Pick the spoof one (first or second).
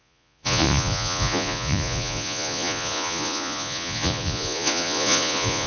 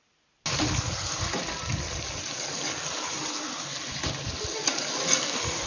first